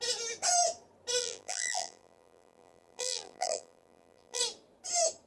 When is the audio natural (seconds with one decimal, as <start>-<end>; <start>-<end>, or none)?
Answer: 0.0-1.2; 4.4-5.3